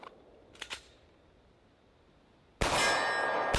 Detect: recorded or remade recorded